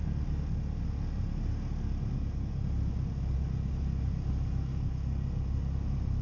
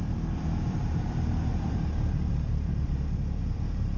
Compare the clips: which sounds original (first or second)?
first